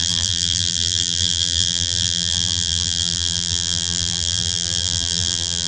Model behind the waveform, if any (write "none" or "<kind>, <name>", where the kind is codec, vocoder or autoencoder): vocoder, BigVGAN v2